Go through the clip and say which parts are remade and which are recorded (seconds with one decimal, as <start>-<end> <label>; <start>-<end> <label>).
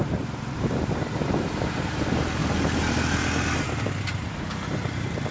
0.0-2.4 remade; 2.4-3.6 recorded; 3.6-5.3 remade